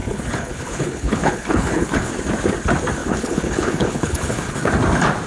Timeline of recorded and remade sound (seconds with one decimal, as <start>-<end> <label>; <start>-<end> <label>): 0.0-2.1 remade; 2.1-3.0 recorded; 3.0-4.7 remade; 4.7-5.3 recorded

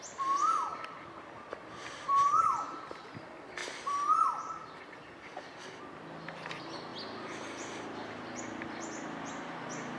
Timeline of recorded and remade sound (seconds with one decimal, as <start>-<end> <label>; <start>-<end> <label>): 0.0-10.0 recorded

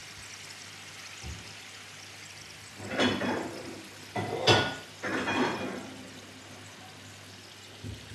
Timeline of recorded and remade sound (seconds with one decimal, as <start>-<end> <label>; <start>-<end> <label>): 0.0-8.1 recorded

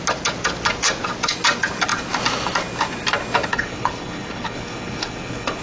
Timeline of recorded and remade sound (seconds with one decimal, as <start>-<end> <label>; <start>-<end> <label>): 0.0-3.5 recorded; 3.5-5.6 remade

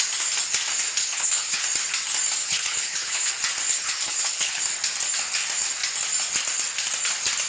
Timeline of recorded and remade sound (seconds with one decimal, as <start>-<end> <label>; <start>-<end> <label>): 0.0-1.0 recorded; 1.0-1.6 remade; 1.6-2.4 recorded; 2.4-3.3 remade; 3.3-3.7 recorded; 3.7-4.6 remade; 4.6-7.5 recorded

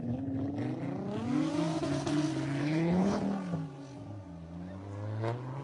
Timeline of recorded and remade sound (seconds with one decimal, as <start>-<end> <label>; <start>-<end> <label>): 0.0-2.6 recorded; 2.6-3.2 remade; 3.2-5.6 recorded

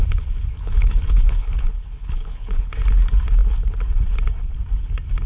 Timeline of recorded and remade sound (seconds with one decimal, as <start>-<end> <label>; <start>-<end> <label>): 0.0-2.7 remade; 2.7-5.3 recorded